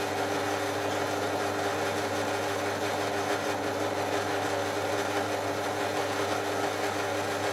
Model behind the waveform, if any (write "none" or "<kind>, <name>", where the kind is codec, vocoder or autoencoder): none